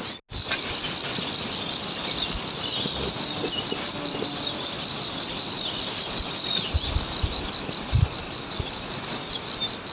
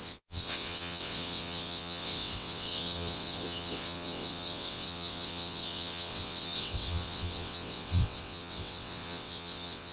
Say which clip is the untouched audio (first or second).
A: first